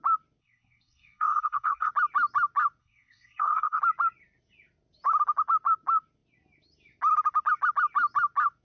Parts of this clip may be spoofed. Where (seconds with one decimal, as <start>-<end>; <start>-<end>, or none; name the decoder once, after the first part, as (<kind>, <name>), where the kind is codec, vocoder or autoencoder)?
0.4-1.9 (codec, SNAC); 2.8-3.8